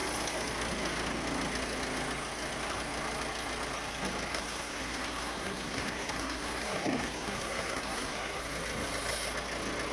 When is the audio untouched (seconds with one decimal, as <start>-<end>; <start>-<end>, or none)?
0.0-4.3; 8.4-9.9